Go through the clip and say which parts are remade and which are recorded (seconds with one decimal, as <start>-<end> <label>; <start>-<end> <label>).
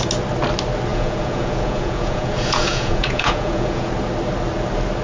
0.0-0.9 recorded; 0.9-3.9 remade; 3.9-5.0 recorded